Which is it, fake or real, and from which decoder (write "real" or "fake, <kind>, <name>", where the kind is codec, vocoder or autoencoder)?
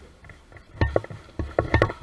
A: real